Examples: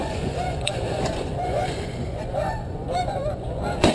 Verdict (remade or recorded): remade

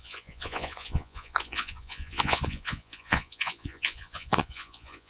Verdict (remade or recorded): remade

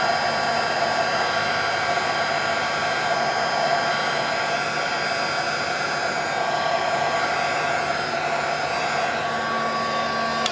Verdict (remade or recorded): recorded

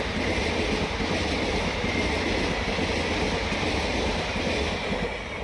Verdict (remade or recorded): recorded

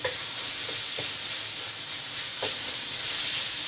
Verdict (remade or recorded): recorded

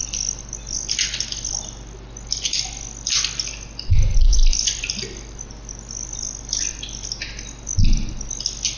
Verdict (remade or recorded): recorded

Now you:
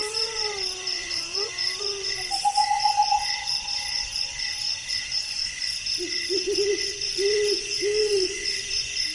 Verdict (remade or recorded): remade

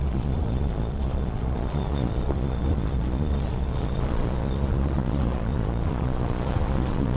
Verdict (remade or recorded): remade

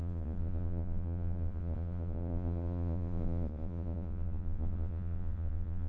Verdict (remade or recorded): remade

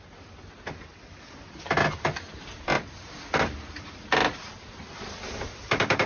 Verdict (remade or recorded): recorded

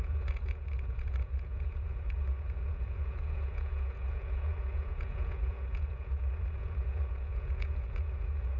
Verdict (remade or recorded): remade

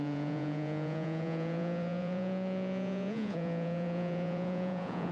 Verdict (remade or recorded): remade